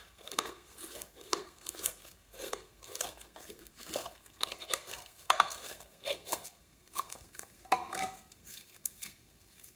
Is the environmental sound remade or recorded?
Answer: remade